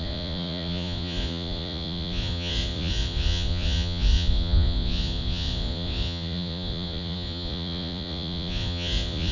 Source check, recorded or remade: remade